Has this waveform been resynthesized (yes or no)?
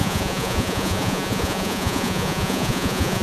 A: yes